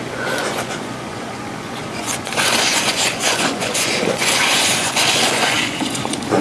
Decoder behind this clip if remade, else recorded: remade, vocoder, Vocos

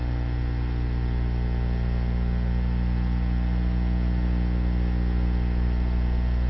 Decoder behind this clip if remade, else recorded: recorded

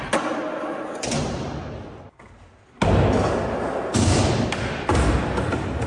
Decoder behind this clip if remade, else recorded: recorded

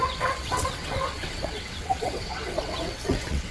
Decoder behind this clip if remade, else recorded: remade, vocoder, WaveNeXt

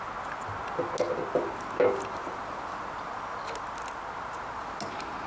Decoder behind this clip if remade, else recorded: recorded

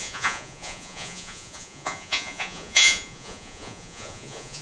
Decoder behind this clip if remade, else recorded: remade, vocoder, Vocos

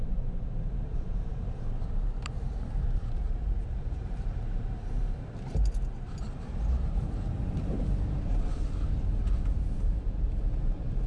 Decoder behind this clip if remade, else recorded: remade, vocoder, BigVGAN v2